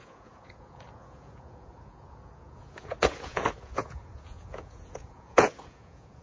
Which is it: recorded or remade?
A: remade